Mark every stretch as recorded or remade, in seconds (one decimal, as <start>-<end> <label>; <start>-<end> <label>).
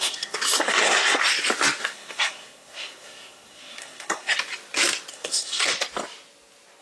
0.0-1.2 remade; 1.2-1.8 recorded; 1.8-4.3 remade; 4.3-5.1 recorded; 5.1-5.7 remade; 5.7-6.8 recorded